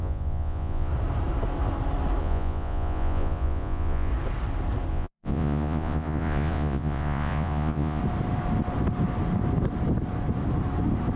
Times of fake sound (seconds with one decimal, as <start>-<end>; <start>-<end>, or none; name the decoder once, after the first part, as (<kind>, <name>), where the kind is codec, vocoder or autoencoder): 0.0-0.9 (vocoder, Vocos); 2.2-4.1; 4.9-8.0